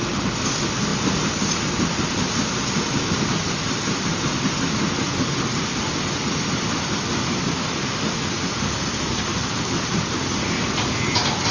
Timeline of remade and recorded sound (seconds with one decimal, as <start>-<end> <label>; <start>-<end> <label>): 0.0-11.5 recorded